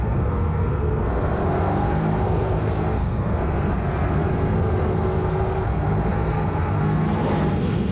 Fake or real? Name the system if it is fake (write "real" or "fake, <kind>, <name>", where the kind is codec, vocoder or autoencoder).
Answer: fake, codec, SNAC